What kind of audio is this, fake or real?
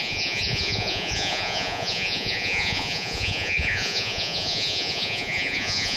fake